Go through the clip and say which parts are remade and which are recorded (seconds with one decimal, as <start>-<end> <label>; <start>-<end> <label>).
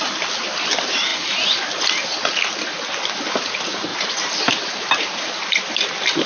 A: 0.0-1.1 recorded; 1.1-1.8 remade; 1.8-3.9 recorded; 3.9-4.5 remade; 4.5-6.3 recorded